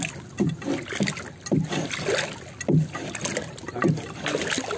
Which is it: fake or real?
real